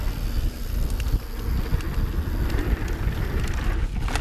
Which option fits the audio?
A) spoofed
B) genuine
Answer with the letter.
B